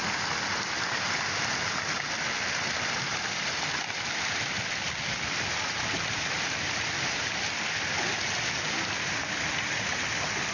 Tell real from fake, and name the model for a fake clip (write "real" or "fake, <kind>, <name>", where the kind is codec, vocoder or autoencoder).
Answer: real